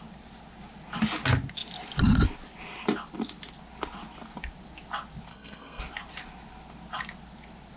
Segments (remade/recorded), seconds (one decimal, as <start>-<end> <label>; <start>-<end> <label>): 0.0-5.3 recorded; 5.3-5.8 remade; 5.8-7.8 recorded